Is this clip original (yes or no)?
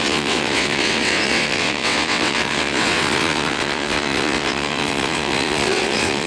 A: no